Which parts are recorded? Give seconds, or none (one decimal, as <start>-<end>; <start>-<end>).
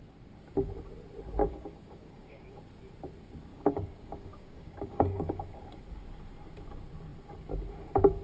0.0-1.4; 2.6-3.5; 5.6-8.2